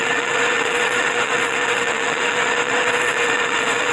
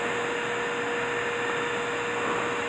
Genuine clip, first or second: second